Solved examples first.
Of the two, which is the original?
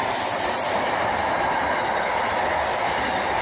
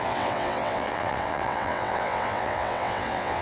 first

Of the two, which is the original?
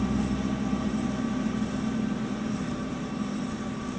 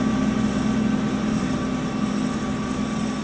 second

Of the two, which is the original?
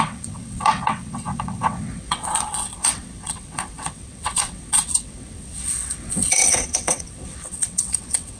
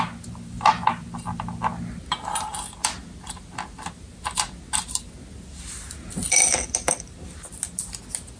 second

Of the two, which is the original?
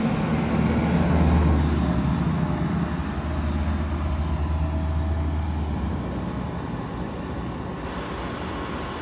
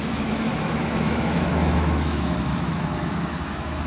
first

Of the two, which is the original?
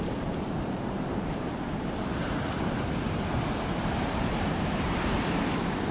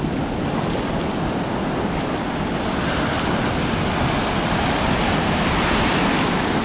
second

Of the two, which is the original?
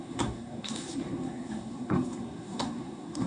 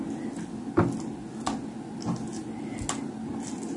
second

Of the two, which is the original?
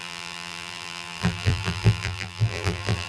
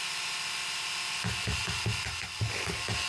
second